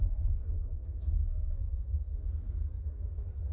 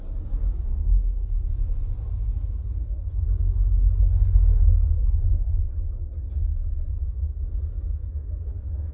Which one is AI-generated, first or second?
first